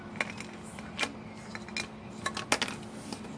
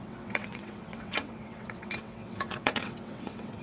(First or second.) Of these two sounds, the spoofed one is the second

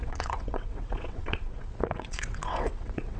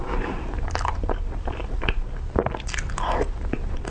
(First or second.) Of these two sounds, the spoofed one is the first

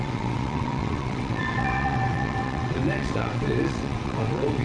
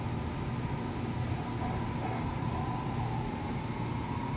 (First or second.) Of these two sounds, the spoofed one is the first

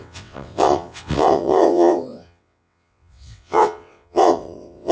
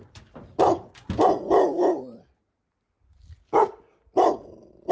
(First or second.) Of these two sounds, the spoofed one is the first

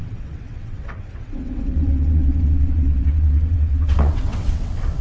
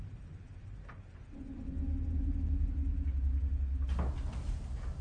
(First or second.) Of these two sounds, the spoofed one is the first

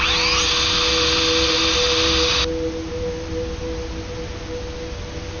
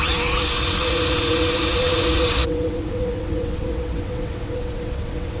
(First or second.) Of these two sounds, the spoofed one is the second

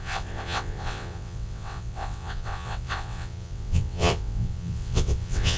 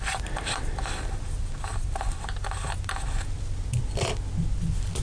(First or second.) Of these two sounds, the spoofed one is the first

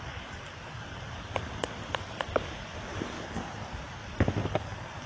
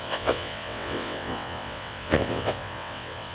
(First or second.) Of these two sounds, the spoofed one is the second